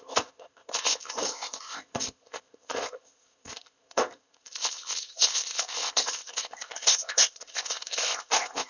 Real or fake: fake